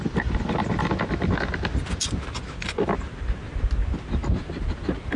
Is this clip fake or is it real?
real